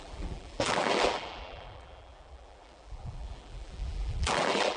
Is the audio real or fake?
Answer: fake